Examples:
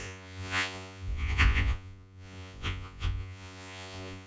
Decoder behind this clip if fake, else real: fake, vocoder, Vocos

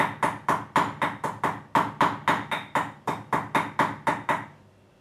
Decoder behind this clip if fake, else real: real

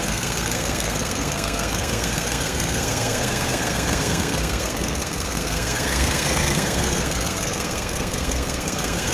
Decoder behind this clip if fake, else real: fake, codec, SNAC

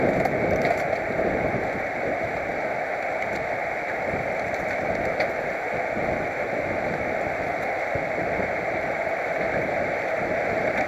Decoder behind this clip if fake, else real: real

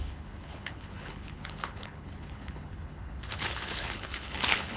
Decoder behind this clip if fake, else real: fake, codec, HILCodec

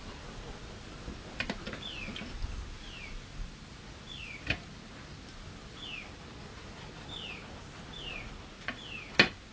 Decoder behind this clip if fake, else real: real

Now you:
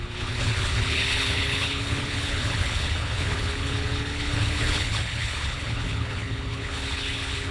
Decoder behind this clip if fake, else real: fake, codec, HILCodec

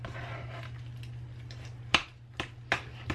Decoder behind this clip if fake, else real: real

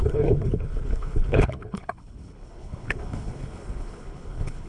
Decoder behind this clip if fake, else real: fake, codec, HILCodec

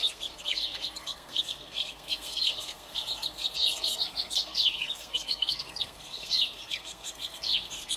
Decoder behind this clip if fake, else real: fake, codec, SNAC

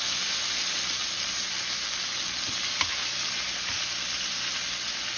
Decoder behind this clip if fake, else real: real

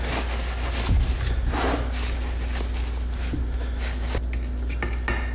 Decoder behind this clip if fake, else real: real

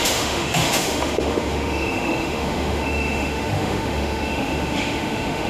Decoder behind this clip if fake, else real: fake, autoencoder, DAC-VAE